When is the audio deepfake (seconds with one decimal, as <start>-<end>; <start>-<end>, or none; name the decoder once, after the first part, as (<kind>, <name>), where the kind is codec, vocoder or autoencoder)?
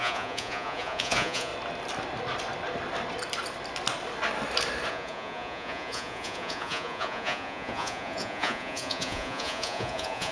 0.0-1.5 (vocoder, Vocos); 4.9-10.3